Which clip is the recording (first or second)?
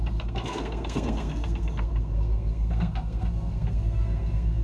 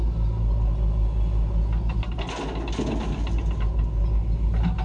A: second